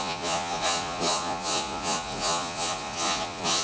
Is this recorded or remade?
remade